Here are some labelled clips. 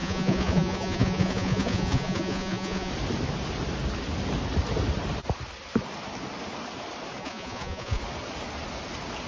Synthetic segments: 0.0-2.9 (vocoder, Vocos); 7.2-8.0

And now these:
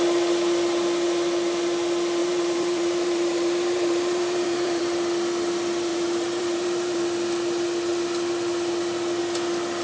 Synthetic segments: 2.2-4.8 (vocoder, BigVGAN v2); 5.9-7.0

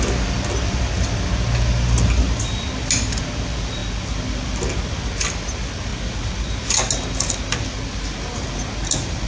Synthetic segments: none